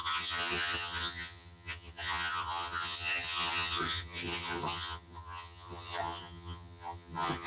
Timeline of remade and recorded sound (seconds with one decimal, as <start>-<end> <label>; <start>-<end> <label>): 0.0-7.5 remade